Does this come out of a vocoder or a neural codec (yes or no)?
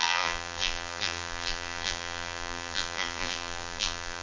yes